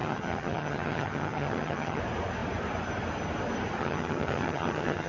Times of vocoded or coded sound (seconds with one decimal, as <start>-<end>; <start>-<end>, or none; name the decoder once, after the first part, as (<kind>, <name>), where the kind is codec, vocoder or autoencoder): 0.0-2.0 (vocoder, HiFi-GAN); 3.8-5.1